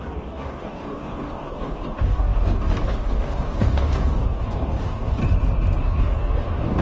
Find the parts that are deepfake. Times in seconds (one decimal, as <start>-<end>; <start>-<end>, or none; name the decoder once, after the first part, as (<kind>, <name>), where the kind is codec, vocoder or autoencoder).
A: 0.0-5.2 (codec, DAC); 5.8-6.8